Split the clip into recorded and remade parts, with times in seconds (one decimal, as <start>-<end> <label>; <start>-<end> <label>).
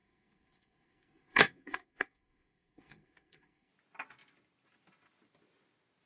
0.0-3.7 remade; 3.7-6.1 recorded